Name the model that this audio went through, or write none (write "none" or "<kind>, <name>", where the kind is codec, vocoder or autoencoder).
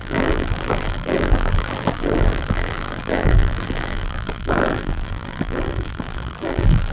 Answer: vocoder, BigVGAN v2